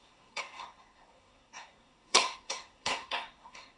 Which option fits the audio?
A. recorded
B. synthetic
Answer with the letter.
B